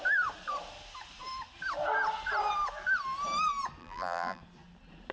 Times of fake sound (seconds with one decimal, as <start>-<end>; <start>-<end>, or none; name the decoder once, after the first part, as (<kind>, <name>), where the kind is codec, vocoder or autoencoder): 3.8-4.4 (vocoder, BigVGAN v2)